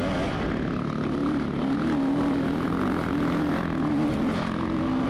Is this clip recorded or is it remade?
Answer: recorded